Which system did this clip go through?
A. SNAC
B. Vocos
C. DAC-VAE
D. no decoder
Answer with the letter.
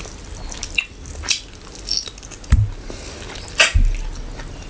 D